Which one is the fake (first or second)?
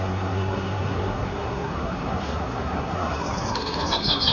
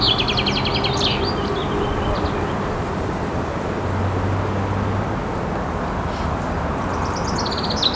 first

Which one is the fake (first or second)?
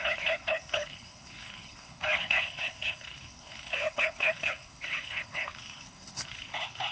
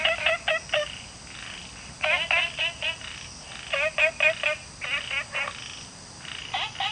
first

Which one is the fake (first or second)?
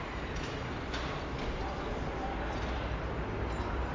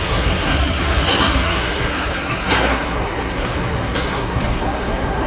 second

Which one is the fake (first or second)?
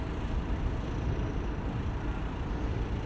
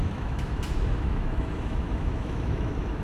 second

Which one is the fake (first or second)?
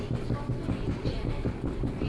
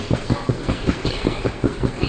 second